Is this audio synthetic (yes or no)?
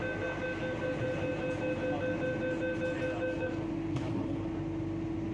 no